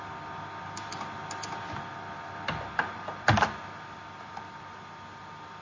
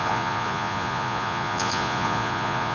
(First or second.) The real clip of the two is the first